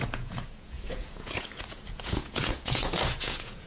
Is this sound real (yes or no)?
no